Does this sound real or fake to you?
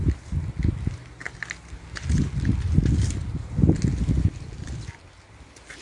real